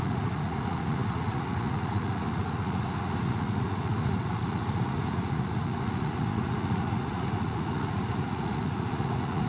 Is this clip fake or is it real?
fake